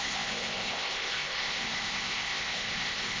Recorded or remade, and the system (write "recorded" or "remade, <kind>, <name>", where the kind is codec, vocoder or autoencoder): remade, codec, ZipCodec